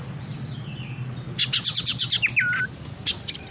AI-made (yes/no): no